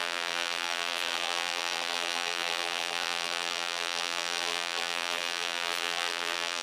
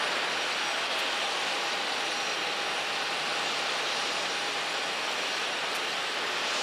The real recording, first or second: second